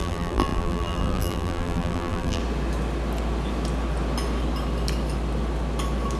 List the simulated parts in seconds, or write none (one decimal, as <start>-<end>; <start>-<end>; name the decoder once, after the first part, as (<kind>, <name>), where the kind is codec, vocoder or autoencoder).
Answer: 0.0-2.4 (vocoder, BigVGAN v2)